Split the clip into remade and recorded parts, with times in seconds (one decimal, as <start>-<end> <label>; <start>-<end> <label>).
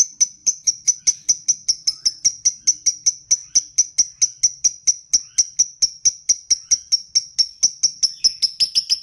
0.0-0.4 recorded; 0.4-1.0 remade; 1.0-9.0 recorded